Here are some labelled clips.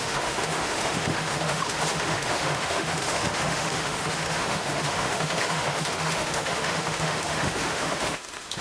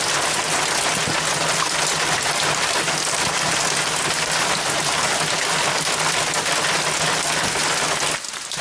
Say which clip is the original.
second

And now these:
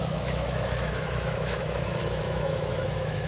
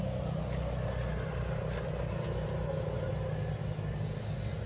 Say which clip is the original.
second